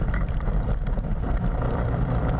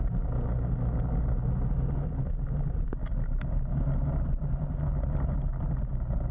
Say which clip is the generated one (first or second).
first